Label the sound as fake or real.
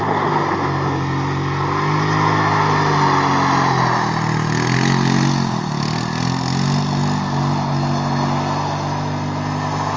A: real